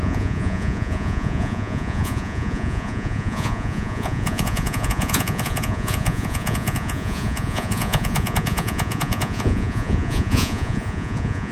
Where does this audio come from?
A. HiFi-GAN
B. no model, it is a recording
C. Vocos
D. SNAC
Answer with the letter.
C